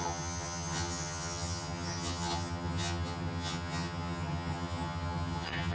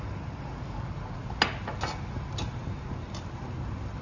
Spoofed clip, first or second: first